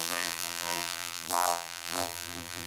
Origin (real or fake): fake